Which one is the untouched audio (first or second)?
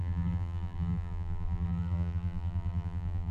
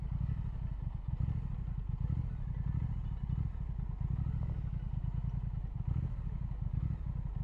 second